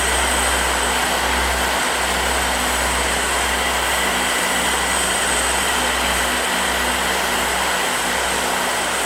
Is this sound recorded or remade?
recorded